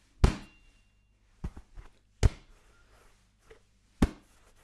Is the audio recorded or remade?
recorded